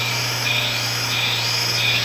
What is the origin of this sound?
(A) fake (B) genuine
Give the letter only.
B